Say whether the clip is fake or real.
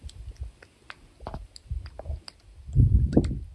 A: real